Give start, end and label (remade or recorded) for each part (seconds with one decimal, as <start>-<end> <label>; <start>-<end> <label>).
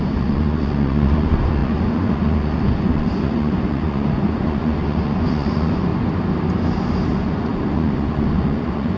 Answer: 0.0-5.9 remade; 5.9-7.1 recorded; 7.1-9.0 remade